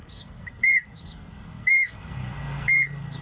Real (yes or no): no